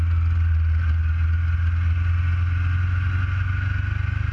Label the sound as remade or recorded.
recorded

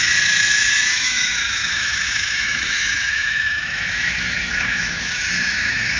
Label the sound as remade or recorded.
remade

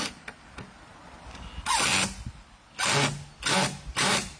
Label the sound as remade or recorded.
recorded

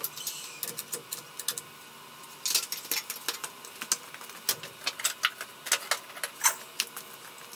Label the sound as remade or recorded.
recorded